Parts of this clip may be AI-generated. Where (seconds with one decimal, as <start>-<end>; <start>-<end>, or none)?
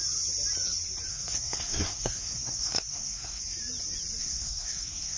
1.1-3.4; 4.2-5.2